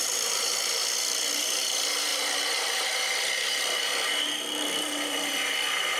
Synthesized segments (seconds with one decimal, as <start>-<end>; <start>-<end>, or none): 0.0-3.9; 4.8-6.0